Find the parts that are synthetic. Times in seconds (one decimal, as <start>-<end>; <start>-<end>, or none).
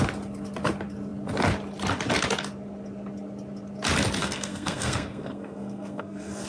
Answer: 4.2-6.5